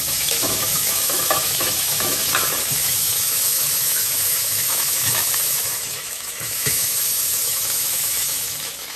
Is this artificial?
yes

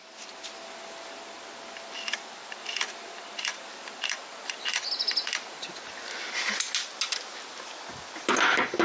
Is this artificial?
no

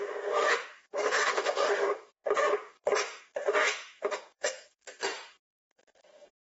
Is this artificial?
yes